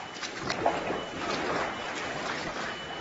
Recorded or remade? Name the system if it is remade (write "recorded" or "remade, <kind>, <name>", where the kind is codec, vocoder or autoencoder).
recorded